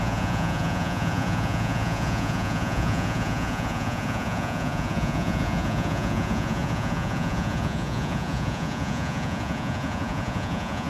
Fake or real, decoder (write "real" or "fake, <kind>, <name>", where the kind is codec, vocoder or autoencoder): fake, vocoder, Vocos